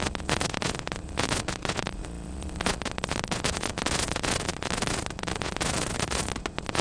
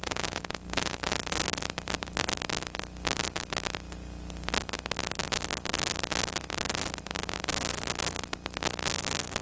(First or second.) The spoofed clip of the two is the first